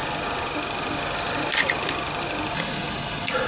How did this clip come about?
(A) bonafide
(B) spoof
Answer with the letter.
A